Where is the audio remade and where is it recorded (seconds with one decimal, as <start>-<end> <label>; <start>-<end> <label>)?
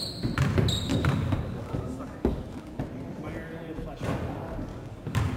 0.0-0.9 recorded; 0.9-2.8 remade; 2.8-4.7 recorded; 4.7-5.4 remade